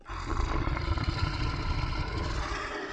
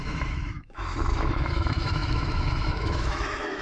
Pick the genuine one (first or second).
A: first